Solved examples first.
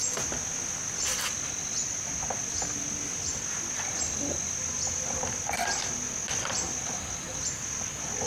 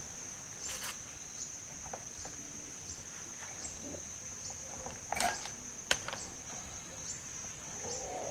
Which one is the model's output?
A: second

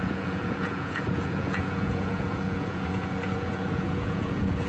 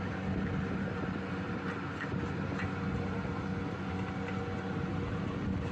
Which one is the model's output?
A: first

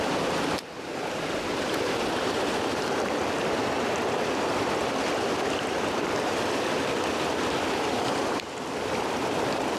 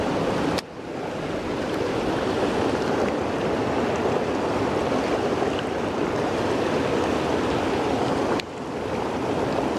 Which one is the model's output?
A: first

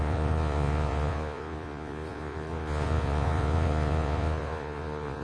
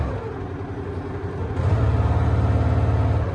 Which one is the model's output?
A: first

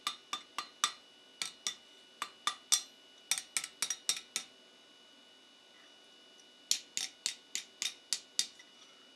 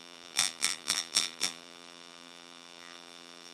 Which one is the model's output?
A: second